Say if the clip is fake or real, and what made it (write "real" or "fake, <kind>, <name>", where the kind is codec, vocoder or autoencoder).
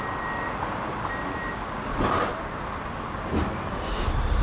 real